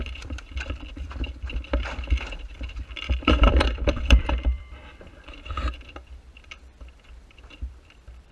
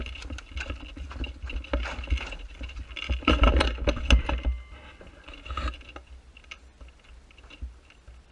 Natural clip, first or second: second